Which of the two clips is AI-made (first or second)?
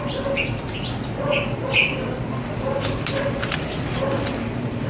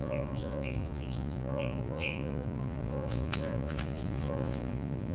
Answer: second